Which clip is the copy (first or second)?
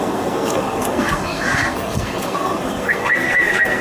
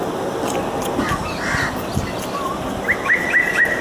first